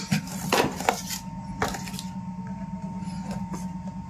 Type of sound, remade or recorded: recorded